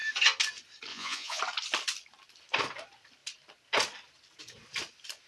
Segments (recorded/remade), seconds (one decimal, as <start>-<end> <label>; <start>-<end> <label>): 0.0-0.9 recorded; 0.9-1.4 remade; 1.4-5.3 recorded